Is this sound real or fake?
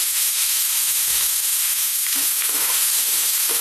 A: fake